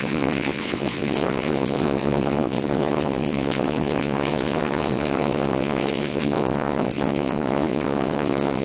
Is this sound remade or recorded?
remade